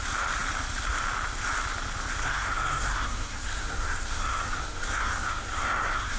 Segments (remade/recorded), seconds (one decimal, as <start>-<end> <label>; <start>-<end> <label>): 0.0-2.2 recorded; 2.2-6.2 remade

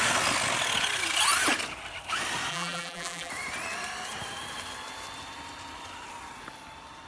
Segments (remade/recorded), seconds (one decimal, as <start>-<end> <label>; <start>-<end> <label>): 0.0-2.5 recorded; 2.5-3.3 remade; 3.3-7.1 recorded

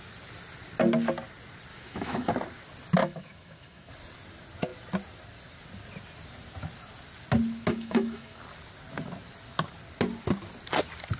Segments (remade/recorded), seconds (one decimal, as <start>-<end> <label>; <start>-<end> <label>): 0.0-1.7 recorded; 1.7-2.3 remade; 2.3-3.0 recorded; 3.0-3.9 remade; 3.9-7.7 recorded; 7.7-8.4 remade; 8.4-11.2 recorded

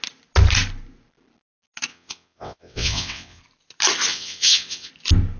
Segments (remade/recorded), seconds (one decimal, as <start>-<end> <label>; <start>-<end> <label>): 0.0-1.9 recorded; 1.9-3.4 remade; 3.4-4.1 recorded; 4.1-4.9 remade; 4.9-5.4 recorded

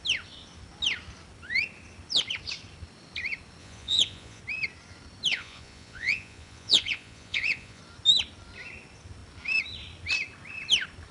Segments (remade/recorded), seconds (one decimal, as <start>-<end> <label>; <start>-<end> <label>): 0.0-3.6 recorded; 3.6-4.4 remade; 4.4-5.3 recorded; 5.3-7.8 remade; 7.8-11.1 recorded

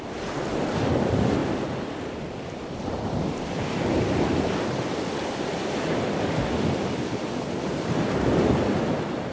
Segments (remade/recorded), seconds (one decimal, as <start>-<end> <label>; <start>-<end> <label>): 0.0-9.3 recorded

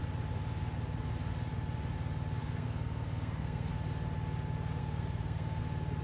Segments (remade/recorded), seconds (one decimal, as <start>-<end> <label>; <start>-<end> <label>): 0.0-2.4 recorded; 2.4-3.7 remade; 3.7-4.8 recorded; 4.8-5.6 remade; 5.6-6.0 recorded

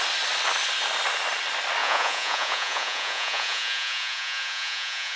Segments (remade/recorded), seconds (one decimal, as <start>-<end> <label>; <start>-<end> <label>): 0.0-1.8 recorded; 1.8-5.2 remade